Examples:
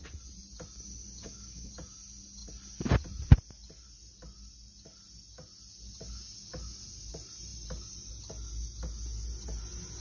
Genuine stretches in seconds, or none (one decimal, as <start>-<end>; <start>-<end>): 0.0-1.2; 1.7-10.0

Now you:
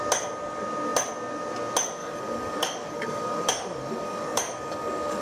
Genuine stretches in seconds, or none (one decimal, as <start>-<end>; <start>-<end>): 0.0-2.0

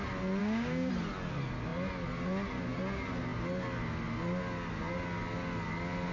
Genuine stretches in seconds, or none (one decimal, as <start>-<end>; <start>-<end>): 0.0-0.4; 0.9-6.1